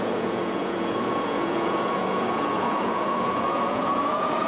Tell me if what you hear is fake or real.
fake